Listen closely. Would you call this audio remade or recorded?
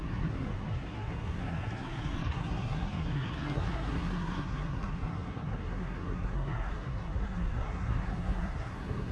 remade